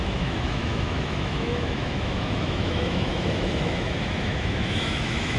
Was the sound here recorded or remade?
remade